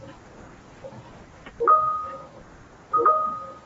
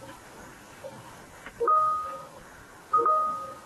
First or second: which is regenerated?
second